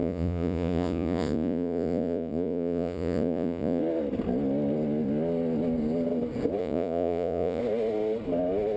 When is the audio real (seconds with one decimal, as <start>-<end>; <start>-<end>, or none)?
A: 3.8-6.6; 7.6-8.8